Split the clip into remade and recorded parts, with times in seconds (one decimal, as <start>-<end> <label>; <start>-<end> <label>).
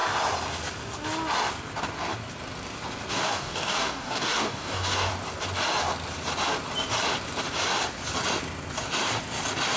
0.0-3.1 recorded; 3.1-5.1 remade; 5.1-9.8 recorded